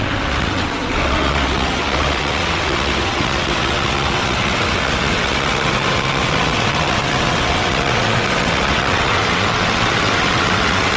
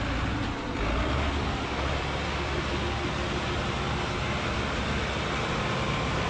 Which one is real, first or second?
second